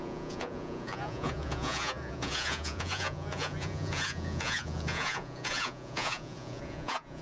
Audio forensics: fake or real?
fake